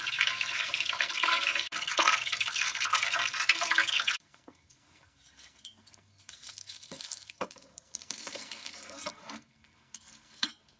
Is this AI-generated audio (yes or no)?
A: yes